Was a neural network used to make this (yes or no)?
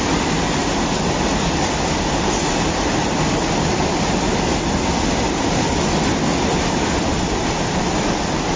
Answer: no